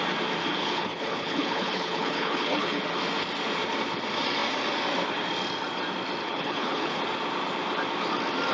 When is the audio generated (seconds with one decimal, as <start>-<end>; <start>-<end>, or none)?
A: 0.4-2.8; 6.2-7.0